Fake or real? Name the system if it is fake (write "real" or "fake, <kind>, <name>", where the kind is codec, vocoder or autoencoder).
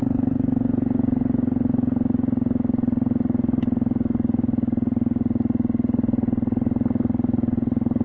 real